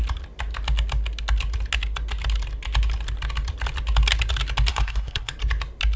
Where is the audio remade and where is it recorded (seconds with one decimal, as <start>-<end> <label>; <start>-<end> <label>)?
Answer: 0.0-4.7 recorded; 4.7-5.3 remade; 5.3-6.0 recorded